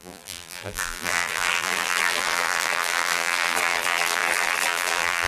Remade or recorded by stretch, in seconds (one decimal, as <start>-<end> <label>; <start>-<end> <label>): 0.0-5.3 remade